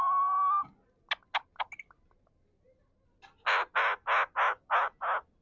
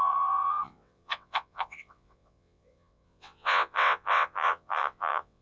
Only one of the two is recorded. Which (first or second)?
first